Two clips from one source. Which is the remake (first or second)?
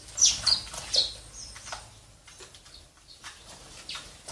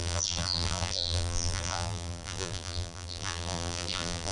second